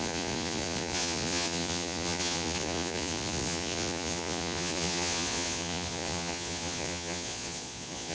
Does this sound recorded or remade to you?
remade